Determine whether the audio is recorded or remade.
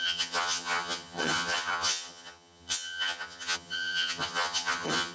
remade